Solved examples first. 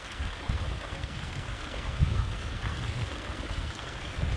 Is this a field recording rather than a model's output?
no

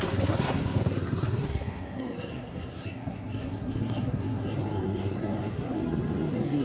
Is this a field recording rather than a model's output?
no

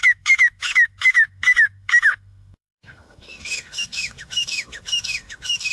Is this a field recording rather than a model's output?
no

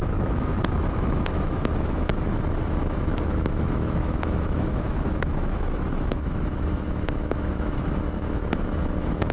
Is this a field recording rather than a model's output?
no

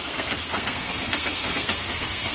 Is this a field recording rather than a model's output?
no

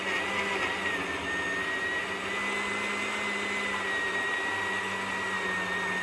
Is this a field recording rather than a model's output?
yes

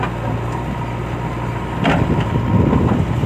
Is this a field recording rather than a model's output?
yes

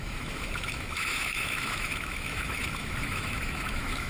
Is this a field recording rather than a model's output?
no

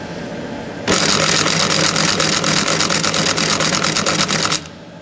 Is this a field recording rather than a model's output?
yes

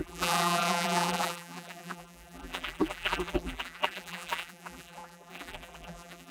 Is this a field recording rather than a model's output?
no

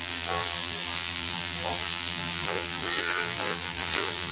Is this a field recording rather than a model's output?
no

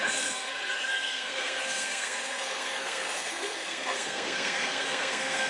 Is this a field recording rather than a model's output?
no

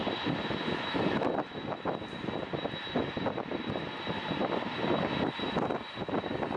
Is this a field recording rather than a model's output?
yes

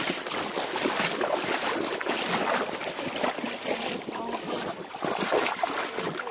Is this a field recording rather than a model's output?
yes